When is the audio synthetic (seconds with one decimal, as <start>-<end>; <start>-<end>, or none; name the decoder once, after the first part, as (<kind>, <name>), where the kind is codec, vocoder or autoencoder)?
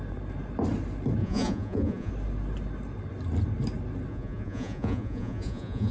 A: 1.2-2.1 (vocoder, Vocos); 4.1-5.9